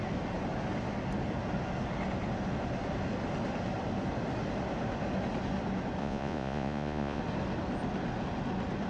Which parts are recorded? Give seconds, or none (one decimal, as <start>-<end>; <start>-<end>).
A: 0.0-6.0; 7.2-8.9